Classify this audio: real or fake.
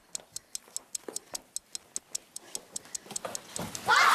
real